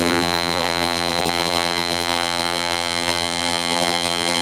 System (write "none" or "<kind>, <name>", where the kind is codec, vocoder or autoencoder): vocoder, BigVGAN v2